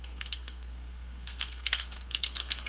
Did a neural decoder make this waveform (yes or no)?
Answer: yes